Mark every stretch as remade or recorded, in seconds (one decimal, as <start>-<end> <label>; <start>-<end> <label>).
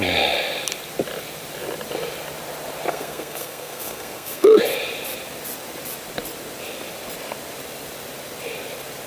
0.0-2.9 recorded; 2.9-4.6 remade; 4.6-9.1 recorded